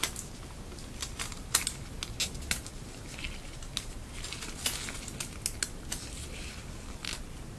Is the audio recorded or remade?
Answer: recorded